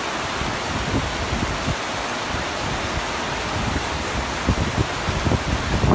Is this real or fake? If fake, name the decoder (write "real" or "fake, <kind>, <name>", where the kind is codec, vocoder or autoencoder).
real